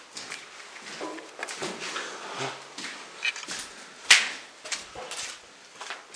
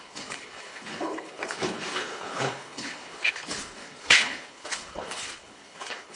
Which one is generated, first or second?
second